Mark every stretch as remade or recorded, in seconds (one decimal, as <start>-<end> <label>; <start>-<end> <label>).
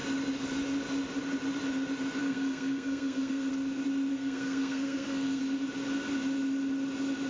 0.0-2.2 recorded; 2.2-3.5 remade; 3.5-4.1 recorded; 4.1-5.4 remade; 5.4-7.3 recorded